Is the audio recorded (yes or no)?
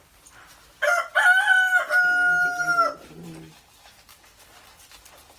yes